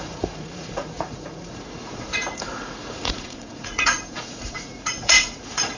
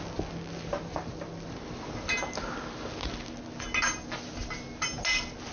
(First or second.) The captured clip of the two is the second